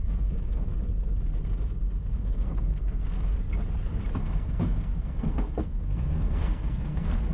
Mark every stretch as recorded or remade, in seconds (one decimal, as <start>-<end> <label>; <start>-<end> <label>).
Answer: 0.0-0.7 remade; 0.7-2.0 recorded; 2.0-3.4 remade; 3.4-4.2 recorded; 4.2-7.3 remade